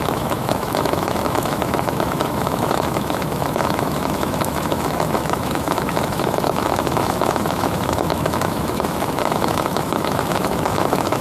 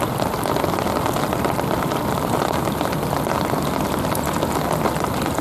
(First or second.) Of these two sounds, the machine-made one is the first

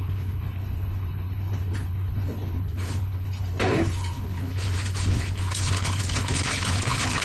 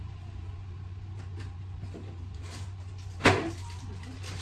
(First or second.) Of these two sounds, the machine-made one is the first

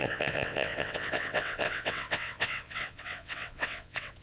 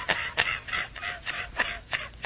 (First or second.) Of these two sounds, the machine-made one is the first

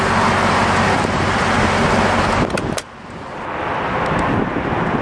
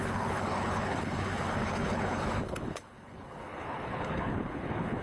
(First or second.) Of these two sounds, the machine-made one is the second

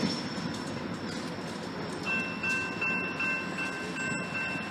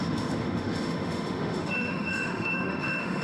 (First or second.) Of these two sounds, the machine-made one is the second